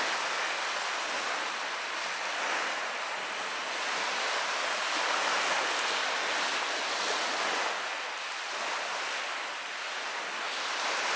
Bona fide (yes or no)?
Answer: yes